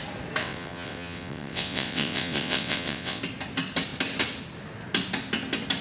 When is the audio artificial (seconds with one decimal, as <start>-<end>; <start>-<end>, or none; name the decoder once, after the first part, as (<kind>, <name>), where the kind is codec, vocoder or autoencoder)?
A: 0.4-3.2 (vocoder, WaveNeXt)